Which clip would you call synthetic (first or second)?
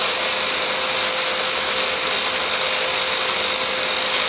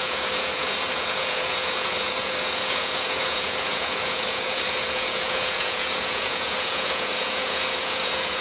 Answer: second